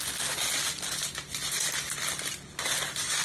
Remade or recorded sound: recorded